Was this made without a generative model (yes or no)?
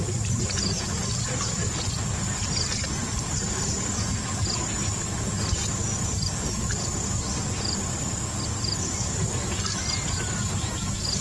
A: yes